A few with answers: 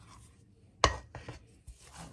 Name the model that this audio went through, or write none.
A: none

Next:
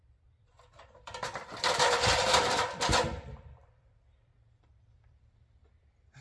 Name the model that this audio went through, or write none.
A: vocoder, BigVGAN v2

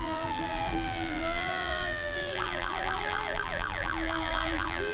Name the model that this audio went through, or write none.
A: vocoder, BigVGAN v2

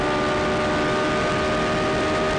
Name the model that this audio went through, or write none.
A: none